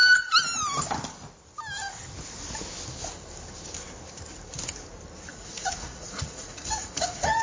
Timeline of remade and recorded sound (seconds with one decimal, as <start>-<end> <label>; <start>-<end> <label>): 0.0-5.3 recorded; 5.3-7.4 remade